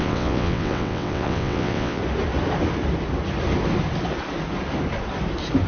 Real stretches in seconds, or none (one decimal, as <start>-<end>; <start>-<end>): 2.0-5.7